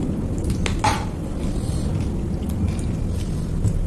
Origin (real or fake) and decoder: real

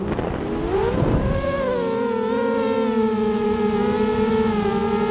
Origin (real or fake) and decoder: real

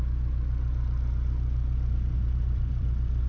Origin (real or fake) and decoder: real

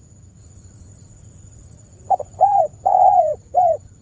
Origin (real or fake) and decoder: fake, vocoder, Vocos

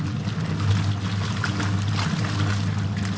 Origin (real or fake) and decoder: real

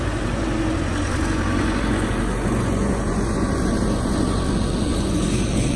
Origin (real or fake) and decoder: fake, vocoder, Vocos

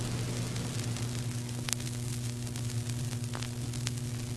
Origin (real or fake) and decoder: real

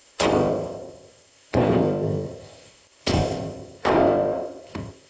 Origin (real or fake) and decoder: fake, codec, ZipCodec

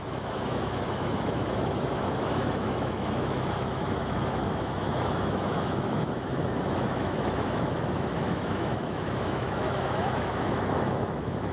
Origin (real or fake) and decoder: fake, autoencoder, DAC-VAE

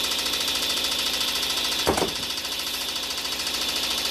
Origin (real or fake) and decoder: fake, vocoder, BigVGAN v2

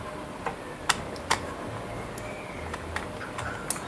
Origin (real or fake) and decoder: real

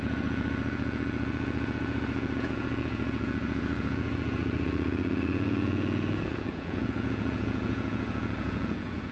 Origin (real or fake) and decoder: fake, vocoder, Vocos